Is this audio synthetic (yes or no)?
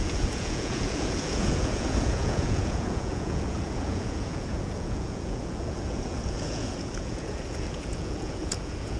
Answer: yes